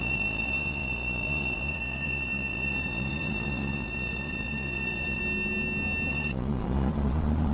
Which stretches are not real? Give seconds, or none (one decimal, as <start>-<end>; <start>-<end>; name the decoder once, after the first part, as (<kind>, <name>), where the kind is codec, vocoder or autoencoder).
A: 0.0-5.2 (vocoder, Vocos); 6.1-7.5